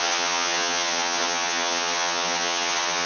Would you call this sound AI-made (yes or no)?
yes